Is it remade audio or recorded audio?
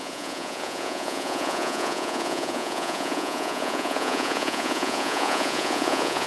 remade